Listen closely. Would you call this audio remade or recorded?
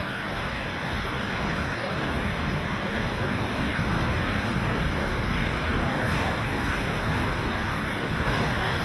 remade